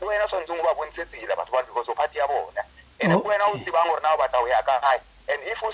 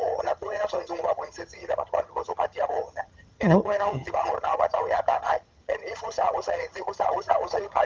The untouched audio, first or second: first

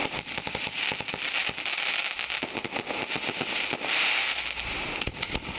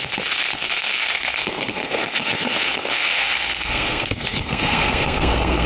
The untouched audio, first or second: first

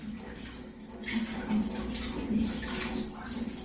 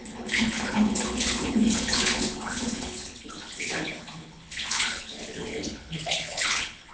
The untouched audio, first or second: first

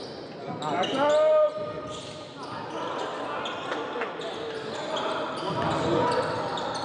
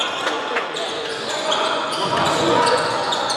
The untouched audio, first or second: first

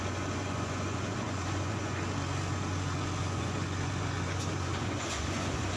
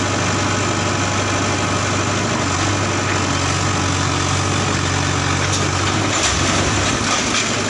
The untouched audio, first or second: second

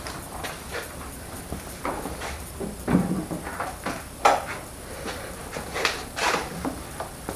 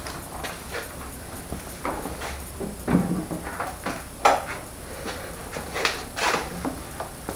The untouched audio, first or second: second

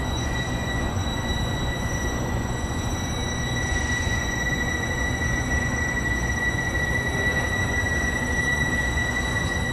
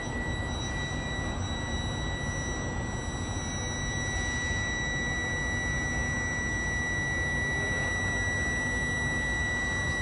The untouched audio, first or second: second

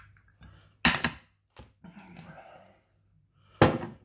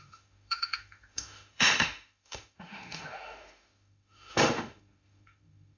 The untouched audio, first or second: first